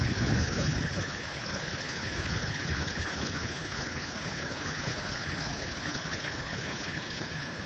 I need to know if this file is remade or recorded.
remade